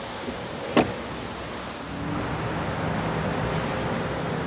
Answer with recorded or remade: recorded